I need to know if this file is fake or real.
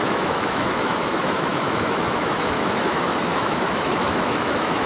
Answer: fake